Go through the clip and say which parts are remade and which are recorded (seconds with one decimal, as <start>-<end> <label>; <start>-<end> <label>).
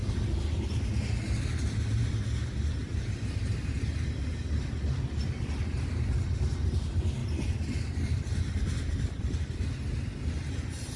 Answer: 0.0-0.8 remade; 0.8-2.8 recorded; 2.8-3.5 remade; 3.5-7.2 recorded; 7.2-9.4 remade; 9.4-11.0 recorded